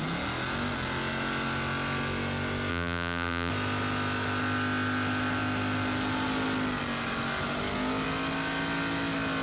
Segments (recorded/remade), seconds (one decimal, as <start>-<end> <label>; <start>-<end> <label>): 0.0-2.7 recorded; 2.7-3.5 remade; 3.5-9.4 recorded